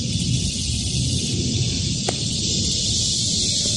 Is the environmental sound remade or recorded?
recorded